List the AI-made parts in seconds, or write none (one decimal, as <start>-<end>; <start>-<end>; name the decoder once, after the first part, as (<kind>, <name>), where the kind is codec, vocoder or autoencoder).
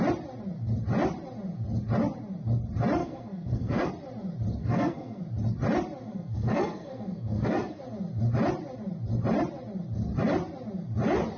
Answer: 3.0-3.9 (codec, SNAC); 4.6-5.2; 6.1-7.8